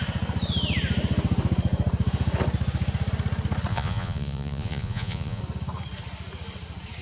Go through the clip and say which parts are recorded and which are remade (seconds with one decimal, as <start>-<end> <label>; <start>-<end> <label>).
0.0-3.7 recorded; 3.7-5.4 remade; 5.4-7.0 recorded